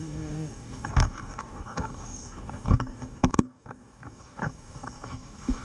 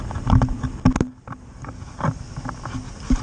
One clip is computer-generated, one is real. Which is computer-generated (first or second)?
first